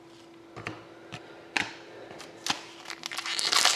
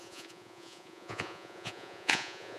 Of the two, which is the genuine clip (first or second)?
first